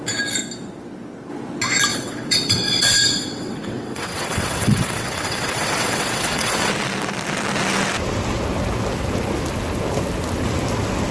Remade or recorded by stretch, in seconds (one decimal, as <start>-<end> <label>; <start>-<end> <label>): 0.0-1.9 recorded; 1.9-6.7 remade; 6.7-11.1 recorded